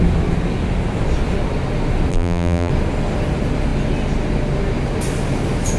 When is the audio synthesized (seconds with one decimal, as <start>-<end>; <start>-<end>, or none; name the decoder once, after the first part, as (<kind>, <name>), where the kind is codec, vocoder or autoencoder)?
2.1-2.7 (vocoder, BigVGAN v2)